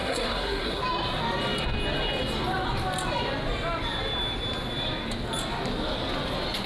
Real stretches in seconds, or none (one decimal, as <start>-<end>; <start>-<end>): 0.8-6.7